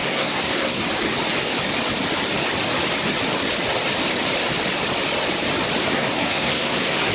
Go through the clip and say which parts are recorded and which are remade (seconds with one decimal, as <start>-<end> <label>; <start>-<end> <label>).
0.0-0.8 remade; 0.8-5.8 recorded; 5.8-7.1 remade